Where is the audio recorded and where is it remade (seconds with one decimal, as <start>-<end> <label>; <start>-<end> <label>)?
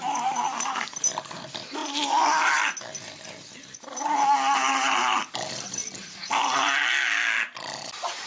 0.0-8.3 recorded